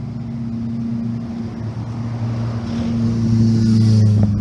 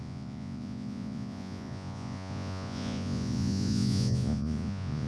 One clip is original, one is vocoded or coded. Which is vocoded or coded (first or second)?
second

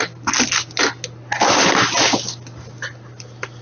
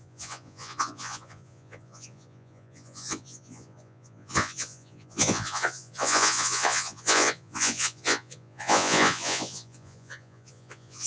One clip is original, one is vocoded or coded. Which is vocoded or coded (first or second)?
second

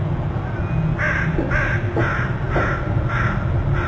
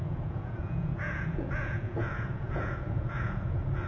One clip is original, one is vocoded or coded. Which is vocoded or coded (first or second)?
second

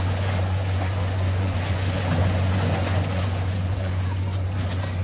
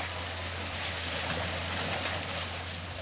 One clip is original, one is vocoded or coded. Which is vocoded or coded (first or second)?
first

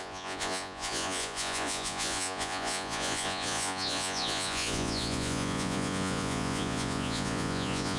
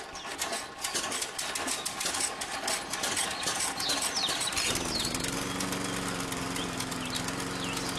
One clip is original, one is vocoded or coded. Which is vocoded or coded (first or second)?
first